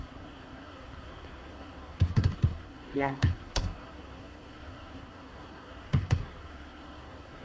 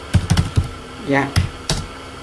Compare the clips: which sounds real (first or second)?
second